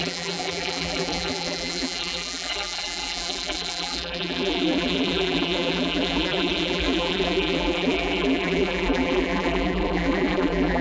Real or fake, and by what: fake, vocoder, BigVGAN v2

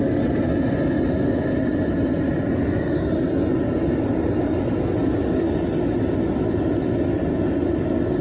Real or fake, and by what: real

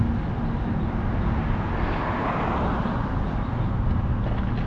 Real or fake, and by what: real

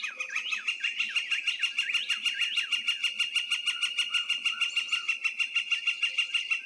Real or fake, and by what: real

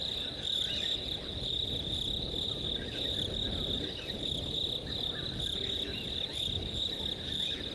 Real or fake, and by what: real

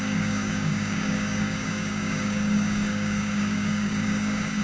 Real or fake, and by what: fake, codec, DAC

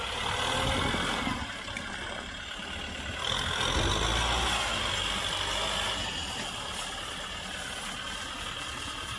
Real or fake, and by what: real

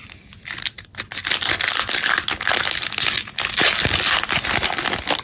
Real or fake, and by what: real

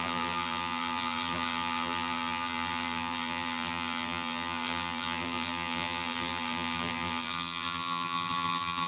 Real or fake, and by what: fake, vocoder, BigVGAN v2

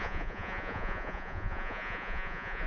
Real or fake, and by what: fake, vocoder, Vocos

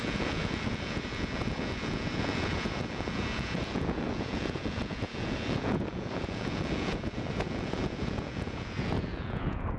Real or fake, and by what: fake, vocoder, Vocos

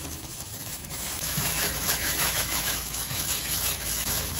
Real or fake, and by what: fake, autoencoder, DAC-VAE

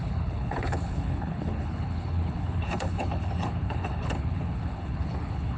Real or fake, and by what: fake, codec, HILCodec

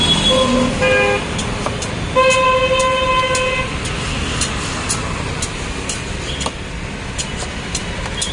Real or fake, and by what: real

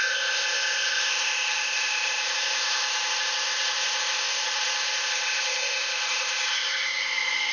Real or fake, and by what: fake, codec, ZipCodec